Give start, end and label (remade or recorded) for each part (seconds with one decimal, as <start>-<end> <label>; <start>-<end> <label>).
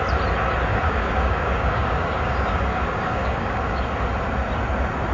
0.0-0.7 recorded; 0.7-3.8 remade; 3.8-5.1 recorded